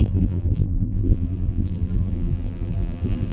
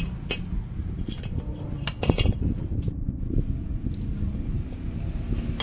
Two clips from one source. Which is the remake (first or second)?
first